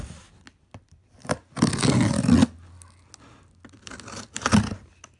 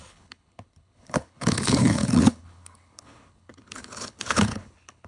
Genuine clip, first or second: first